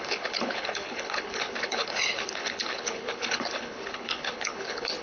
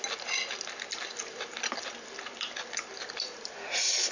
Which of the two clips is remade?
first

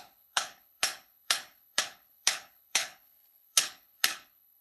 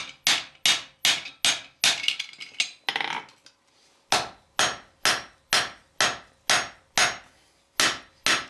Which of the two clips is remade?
first